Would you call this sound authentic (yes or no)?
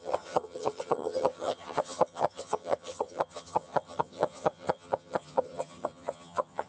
no